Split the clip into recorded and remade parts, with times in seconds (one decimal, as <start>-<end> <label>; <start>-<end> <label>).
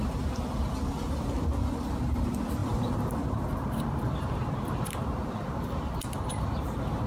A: 0.0-2.6 recorded; 2.6-6.0 remade; 6.0-7.1 recorded